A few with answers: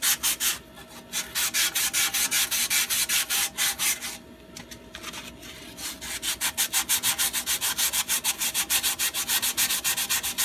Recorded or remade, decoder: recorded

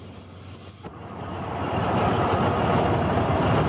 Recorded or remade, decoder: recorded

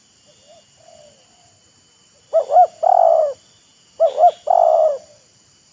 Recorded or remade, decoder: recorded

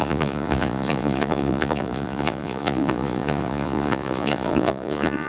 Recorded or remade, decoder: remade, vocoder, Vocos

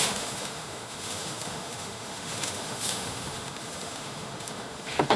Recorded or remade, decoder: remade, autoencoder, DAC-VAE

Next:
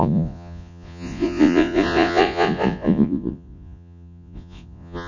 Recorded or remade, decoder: remade, vocoder, Vocos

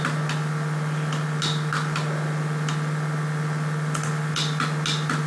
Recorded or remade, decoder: recorded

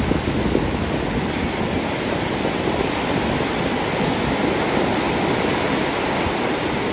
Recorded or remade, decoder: recorded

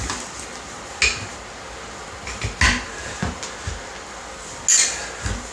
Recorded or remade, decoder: recorded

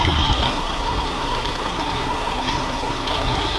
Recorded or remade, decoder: remade, codec, SNAC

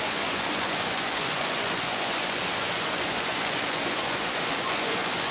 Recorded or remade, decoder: remade, vocoder, Vocos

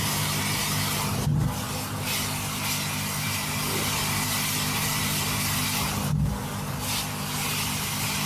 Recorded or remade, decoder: recorded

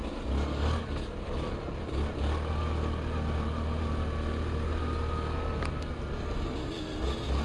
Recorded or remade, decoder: recorded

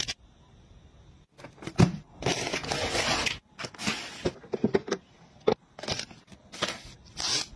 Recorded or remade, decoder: recorded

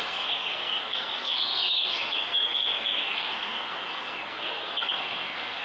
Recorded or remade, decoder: remade, codec, SNAC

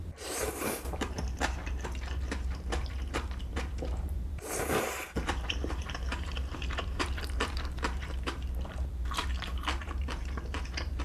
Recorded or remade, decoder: remade, vocoder, BigVGAN v2